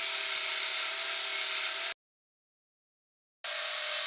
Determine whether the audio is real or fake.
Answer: real